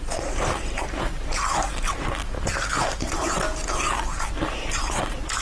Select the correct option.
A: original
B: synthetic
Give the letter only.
A